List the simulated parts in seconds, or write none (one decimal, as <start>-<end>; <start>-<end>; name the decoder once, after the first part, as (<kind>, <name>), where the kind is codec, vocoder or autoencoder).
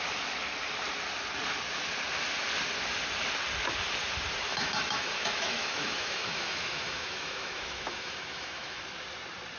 4.5-8.8 (autoencoder, DAC-VAE)